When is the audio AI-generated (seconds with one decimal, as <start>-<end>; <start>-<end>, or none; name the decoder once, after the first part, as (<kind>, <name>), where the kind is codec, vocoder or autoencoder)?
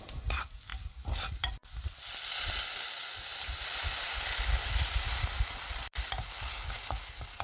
none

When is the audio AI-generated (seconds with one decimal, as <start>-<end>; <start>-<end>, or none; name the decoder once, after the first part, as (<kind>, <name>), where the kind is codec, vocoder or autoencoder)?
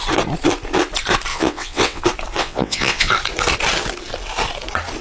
1.3-2.0 (vocoder, WaveNeXt); 2.4-3.1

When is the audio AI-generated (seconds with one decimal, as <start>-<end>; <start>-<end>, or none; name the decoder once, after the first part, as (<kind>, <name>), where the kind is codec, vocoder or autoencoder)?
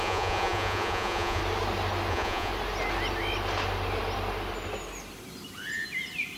0.0-1.4 (vocoder, Vocos); 2.1-2.5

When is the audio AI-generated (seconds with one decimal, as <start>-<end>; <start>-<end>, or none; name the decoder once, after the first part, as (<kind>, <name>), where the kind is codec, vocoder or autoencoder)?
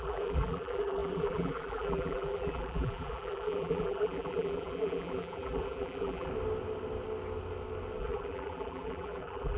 0.0-6.3 (vocoder, BigVGAN v2); 8.0-9.6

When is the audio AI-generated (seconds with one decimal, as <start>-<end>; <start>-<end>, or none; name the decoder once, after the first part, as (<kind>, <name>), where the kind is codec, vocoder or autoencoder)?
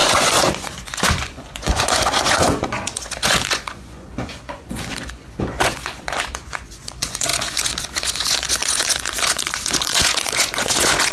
0.0-11.1 (vocoder, Vocos)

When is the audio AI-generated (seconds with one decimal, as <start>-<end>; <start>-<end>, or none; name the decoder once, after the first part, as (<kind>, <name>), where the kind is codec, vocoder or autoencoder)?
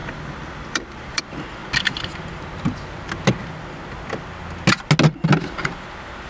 0.0-1.2 (vocoder, BigVGAN v2)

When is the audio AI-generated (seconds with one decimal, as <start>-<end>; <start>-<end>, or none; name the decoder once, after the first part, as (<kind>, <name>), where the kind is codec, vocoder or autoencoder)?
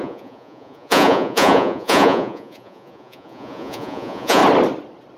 0.0-4.4 (vocoder, Vocos)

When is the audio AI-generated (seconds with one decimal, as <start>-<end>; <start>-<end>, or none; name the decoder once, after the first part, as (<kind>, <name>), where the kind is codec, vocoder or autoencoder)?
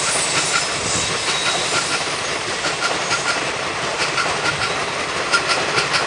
1.4-3.4 (vocoder, BigVGAN v2)